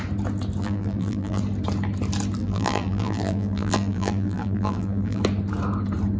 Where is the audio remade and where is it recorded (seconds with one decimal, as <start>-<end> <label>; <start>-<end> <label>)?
0.0-0.6 recorded; 0.6-1.4 remade; 1.4-2.4 recorded; 2.4-5.2 remade; 5.2-6.2 recorded